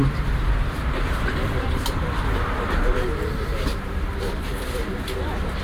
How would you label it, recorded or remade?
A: remade